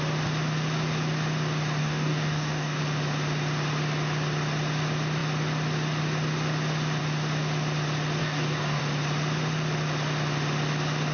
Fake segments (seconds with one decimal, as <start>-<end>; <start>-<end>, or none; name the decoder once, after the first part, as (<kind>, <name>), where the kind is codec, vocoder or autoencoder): 1.8-2.8 (codec, DAC); 8.2-8.8